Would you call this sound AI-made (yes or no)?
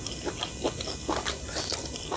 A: no